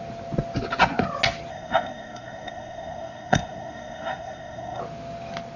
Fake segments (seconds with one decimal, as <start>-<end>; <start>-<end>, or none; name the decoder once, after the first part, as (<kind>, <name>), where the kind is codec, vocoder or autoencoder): 1.5-4.8 (codec, SNAC)